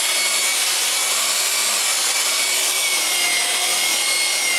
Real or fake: real